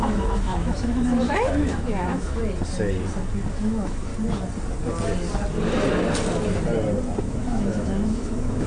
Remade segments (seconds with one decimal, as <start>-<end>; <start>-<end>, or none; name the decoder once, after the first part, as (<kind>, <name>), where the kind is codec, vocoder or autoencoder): 0.0-2.4 (autoencoder, DAC-VAE); 3.5-4.1; 7.2-8.7